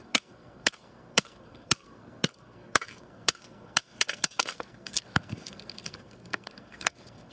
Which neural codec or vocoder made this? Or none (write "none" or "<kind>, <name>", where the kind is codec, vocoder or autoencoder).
codec, SNAC